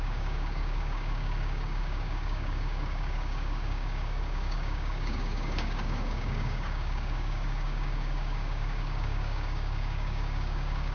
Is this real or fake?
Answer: fake